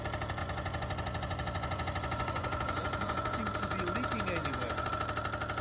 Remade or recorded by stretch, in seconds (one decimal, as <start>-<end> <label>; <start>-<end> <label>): 0.0-0.4 recorded; 0.4-3.4 remade; 3.4-4.4 recorded; 4.4-4.9 remade; 4.9-5.6 recorded